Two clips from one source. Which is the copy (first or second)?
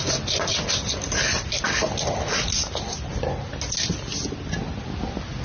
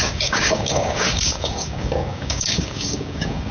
second